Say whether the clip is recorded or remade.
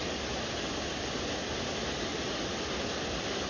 recorded